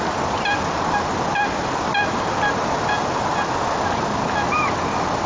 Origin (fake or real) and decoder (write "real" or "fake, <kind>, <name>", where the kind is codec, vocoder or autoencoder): real